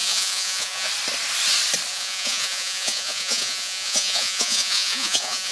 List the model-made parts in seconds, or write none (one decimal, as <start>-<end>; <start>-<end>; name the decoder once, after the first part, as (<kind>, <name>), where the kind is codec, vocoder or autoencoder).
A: 0.0-0.9 (vocoder, Vocos); 1.9-5.5